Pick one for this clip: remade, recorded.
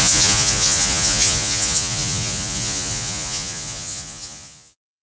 remade